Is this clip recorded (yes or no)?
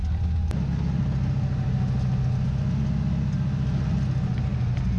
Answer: yes